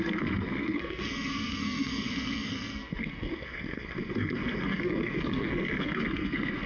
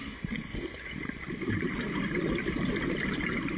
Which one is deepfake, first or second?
first